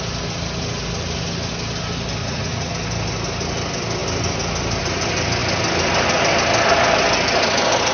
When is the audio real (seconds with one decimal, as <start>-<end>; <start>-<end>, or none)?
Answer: 0.0-2.2; 2.7-7.9